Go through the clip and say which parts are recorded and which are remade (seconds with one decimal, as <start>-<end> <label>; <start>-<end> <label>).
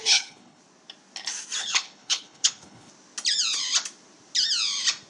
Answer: 0.0-0.6 remade; 0.6-1.6 recorded; 1.6-2.9 remade; 2.9-5.1 recorded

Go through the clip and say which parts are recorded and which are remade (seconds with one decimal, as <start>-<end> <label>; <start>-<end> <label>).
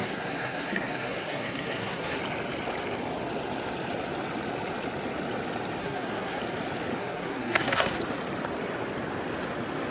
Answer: 0.0-2.2 remade; 2.2-5.8 recorded; 5.8-6.4 remade; 6.4-7.0 recorded; 7.0-8.0 remade; 8.0-9.9 recorded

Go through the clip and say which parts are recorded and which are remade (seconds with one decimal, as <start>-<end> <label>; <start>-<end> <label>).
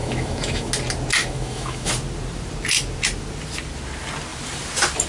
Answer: 0.0-0.7 remade; 0.7-1.2 recorded; 1.2-1.9 remade; 1.9-5.1 recorded